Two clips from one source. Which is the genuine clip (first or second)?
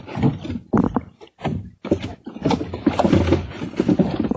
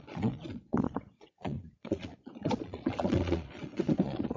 first